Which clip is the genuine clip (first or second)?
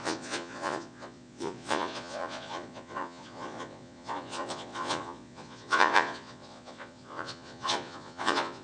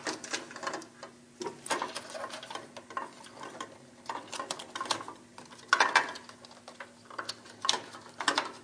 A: second